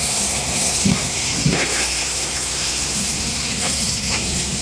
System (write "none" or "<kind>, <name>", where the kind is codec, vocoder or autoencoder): codec, SNAC